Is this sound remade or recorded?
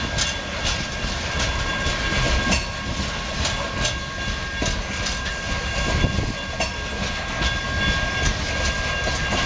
recorded